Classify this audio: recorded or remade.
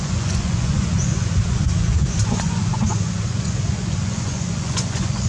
remade